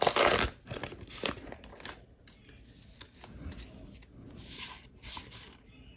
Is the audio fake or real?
real